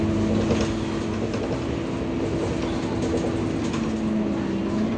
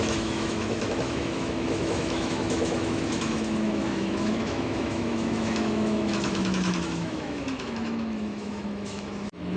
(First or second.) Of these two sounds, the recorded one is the first